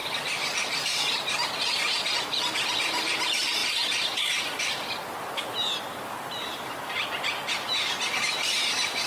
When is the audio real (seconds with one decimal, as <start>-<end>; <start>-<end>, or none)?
0.0-9.1